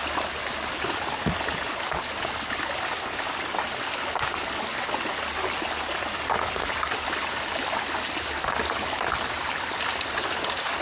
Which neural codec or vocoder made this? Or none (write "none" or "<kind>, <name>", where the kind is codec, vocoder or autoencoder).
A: none